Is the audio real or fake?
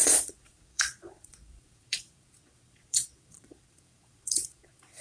fake